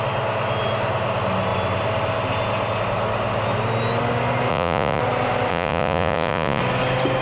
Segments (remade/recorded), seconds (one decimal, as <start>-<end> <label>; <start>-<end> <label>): 0.0-4.5 recorded; 4.5-5.0 remade; 5.0-5.5 recorded; 5.5-6.6 remade; 6.6-7.2 recorded